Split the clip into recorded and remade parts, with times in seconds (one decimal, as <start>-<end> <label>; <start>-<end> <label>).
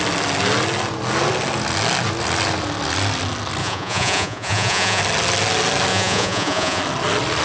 0.0-3.6 recorded; 3.6-5.0 remade; 5.0-5.9 recorded; 5.9-6.8 remade; 6.8-7.4 recorded